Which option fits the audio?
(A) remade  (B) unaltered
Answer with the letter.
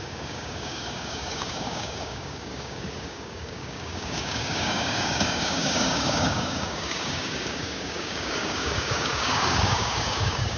A